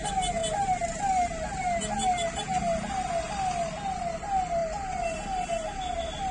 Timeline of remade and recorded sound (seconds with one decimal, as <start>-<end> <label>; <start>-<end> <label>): 0.0-6.3 recorded